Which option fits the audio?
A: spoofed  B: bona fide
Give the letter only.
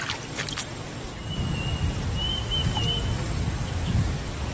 B